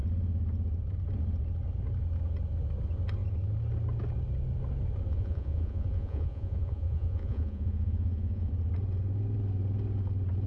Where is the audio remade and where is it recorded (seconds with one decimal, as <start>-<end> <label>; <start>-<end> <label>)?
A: 0.0-5.1 recorded; 5.1-8.5 remade; 8.5-10.5 recorded